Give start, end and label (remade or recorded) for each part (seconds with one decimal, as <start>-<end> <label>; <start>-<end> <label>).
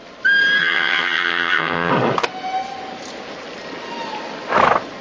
0.0-0.6 recorded; 0.6-1.9 remade; 1.9-5.0 recorded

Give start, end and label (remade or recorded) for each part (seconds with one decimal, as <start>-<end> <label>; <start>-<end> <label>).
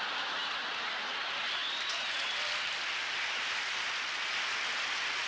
0.0-5.3 recorded